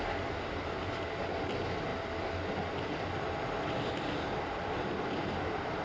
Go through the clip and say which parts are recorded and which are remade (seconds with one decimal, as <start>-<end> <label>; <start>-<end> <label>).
0.0-5.8 recorded